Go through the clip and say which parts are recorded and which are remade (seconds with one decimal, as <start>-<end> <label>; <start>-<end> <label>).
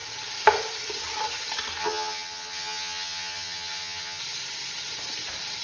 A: 0.0-1.8 recorded; 1.8-4.2 remade; 4.2-5.6 recorded